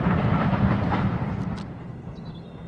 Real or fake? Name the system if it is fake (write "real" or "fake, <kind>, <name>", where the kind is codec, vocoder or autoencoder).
real